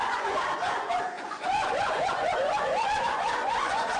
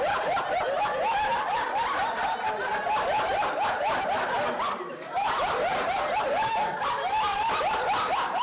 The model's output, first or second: first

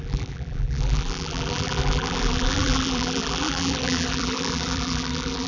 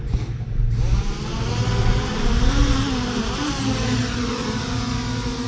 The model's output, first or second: first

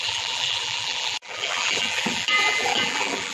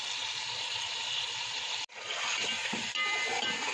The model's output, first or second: first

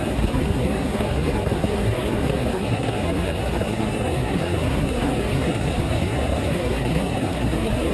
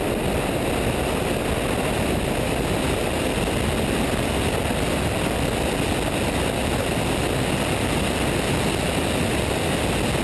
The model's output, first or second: first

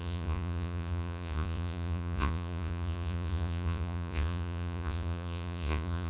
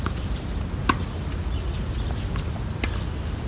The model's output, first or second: first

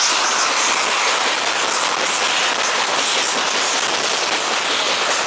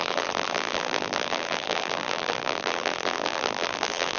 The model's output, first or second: second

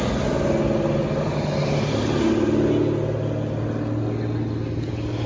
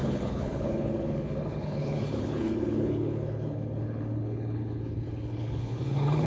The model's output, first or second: second